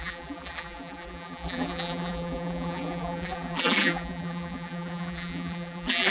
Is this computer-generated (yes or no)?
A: yes